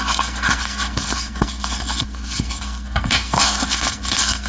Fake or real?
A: fake